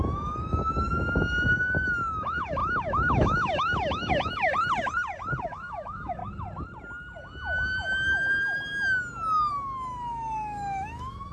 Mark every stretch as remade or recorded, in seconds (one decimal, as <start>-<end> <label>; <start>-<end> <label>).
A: 0.0-4.5 remade; 4.5-5.4 recorded; 5.4-6.2 remade; 6.2-9.5 recorded; 9.5-11.3 remade